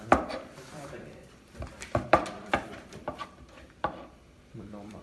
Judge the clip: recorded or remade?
remade